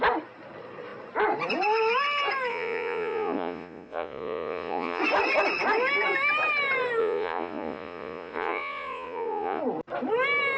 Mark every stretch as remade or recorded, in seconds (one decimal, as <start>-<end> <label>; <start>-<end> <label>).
0.0-2.5 recorded; 2.5-5.0 remade; 5.0-7.0 recorded; 7.0-9.6 remade; 9.6-10.6 recorded